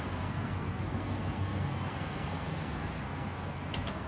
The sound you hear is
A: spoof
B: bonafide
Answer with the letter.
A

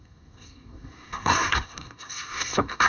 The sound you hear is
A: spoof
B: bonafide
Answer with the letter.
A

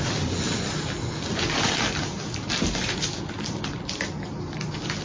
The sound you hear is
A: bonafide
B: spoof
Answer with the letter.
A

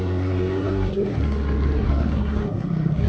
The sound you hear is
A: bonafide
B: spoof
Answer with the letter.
B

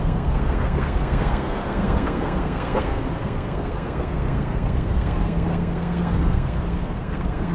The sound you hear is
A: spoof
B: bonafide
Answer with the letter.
A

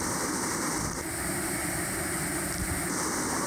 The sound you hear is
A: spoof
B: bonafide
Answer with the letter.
B